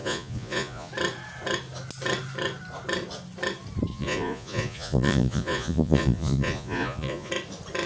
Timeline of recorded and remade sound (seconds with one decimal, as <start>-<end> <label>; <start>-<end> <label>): 0.0-0.9 remade; 0.9-3.9 recorded; 3.9-7.3 remade; 7.3-7.9 recorded